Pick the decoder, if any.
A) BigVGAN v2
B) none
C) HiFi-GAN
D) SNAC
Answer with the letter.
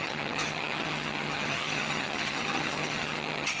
C